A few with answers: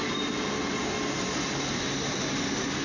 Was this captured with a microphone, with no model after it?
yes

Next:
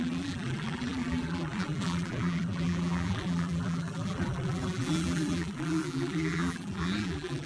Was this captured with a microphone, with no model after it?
no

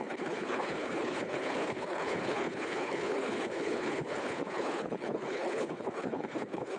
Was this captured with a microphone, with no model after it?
no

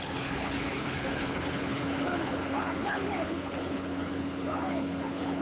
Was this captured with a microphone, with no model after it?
no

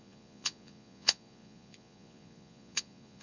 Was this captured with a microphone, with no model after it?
no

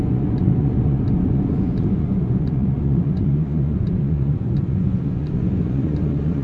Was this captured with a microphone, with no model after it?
no